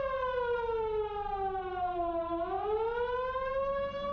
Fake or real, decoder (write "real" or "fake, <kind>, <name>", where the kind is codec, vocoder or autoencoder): real